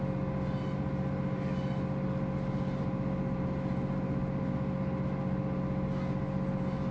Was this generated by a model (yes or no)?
no